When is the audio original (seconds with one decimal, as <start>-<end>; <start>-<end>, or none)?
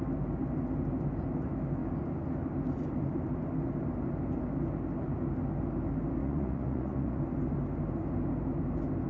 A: 0.0-6.2; 7.2-9.1